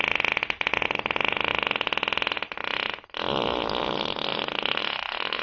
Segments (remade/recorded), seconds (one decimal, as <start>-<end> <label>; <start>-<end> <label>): 0.0-5.4 recorded